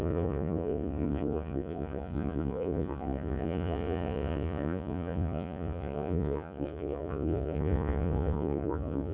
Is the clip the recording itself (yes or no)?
no